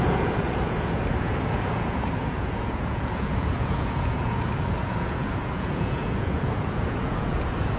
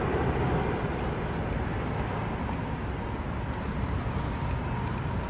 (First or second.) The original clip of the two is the second